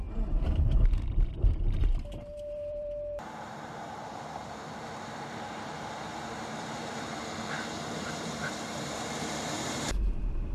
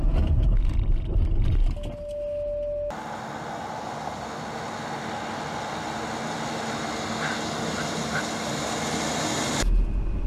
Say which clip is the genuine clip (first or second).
second